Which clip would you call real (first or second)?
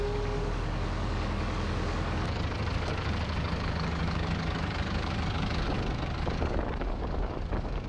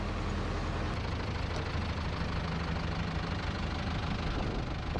second